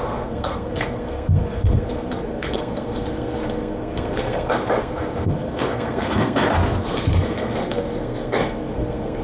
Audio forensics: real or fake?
fake